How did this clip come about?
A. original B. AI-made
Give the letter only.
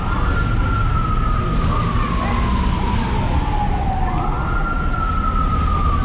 A